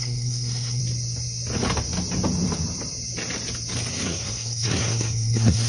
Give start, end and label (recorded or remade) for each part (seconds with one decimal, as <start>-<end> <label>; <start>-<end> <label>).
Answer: 0.0-0.8 remade; 0.8-3.9 recorded; 3.9-5.7 remade